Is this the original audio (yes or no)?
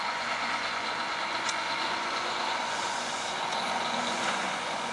no